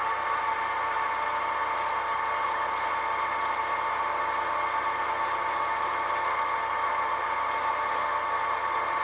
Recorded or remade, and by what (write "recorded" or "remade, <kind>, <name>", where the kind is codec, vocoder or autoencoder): recorded